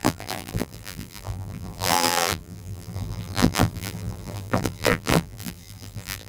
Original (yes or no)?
no